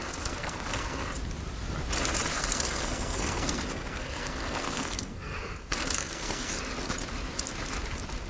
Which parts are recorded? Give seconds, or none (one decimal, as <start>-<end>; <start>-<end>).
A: 1.1-2.3; 6.6-8.3